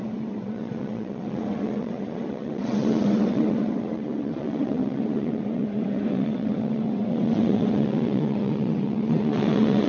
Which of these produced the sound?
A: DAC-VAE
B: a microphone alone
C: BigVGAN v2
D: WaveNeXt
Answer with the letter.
D